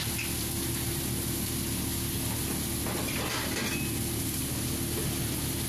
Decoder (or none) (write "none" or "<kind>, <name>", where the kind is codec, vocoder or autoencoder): none